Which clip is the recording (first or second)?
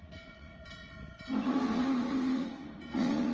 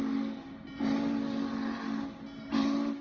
second